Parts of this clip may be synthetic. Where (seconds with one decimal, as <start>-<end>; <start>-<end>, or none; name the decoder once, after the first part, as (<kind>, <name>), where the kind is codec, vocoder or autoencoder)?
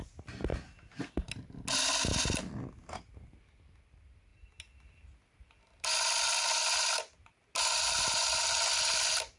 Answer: none